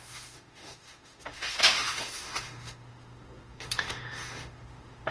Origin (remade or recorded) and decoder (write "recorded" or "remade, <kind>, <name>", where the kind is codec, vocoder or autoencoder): remade, autoencoder, DAC-VAE